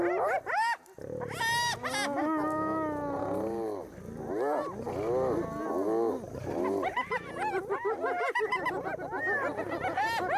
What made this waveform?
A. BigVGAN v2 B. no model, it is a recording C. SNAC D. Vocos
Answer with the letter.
B